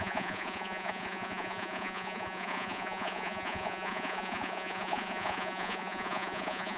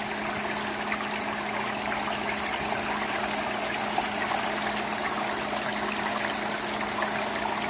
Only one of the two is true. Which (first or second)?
second